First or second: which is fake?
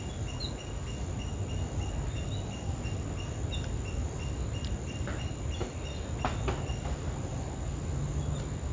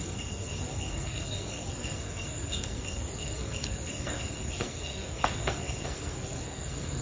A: second